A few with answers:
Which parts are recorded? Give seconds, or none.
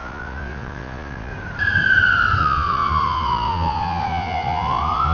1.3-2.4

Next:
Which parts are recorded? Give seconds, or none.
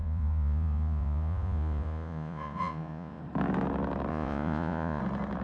3.2-4.1; 5.0-5.4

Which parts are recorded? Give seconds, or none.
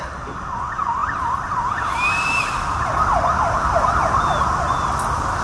0.0-5.4